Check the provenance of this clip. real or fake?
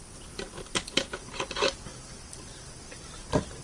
real